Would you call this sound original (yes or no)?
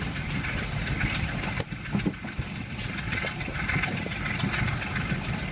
yes